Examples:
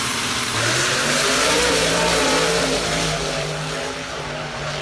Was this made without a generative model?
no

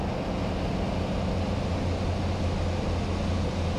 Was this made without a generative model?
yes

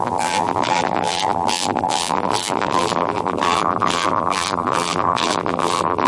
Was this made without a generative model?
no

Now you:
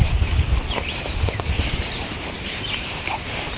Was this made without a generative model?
no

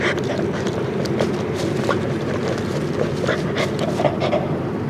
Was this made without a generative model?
no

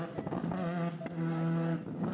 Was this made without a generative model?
yes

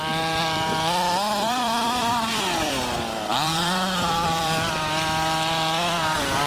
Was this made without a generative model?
no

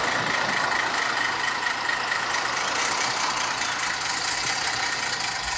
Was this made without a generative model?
no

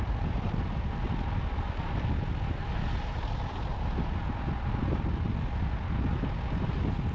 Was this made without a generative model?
yes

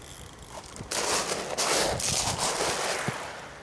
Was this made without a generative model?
yes